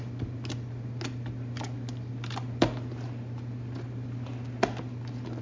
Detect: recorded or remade recorded